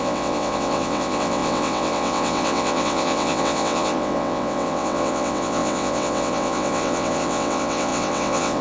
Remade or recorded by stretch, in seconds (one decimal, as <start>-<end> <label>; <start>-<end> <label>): 0.0-8.6 remade